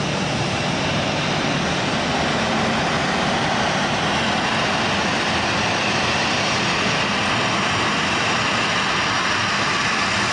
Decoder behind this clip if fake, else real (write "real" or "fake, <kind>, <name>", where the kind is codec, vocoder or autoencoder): real